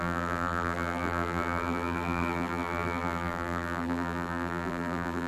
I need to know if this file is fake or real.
fake